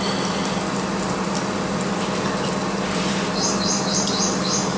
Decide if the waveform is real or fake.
real